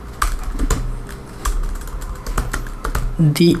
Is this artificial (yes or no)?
no